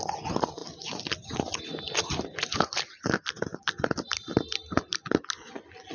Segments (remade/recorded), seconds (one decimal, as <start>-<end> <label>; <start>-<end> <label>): 0.0-5.9 recorded